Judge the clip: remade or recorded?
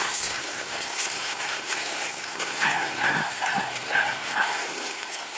remade